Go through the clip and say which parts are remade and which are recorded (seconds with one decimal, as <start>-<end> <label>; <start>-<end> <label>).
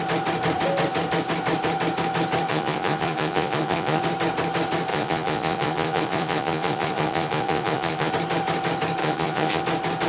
0.0-2.5 recorded; 2.5-4.0 remade; 4.0-4.9 recorded; 4.9-8.1 remade; 8.1-9.0 recorded; 9.0-9.6 remade; 9.6-10.1 recorded